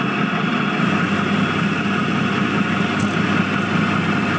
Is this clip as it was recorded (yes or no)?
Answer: yes